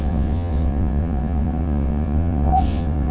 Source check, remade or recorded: remade